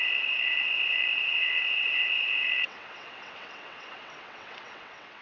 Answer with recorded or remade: remade